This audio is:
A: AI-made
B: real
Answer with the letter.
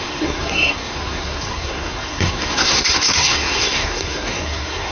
A